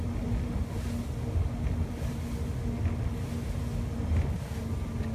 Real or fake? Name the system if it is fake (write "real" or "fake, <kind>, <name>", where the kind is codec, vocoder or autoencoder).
real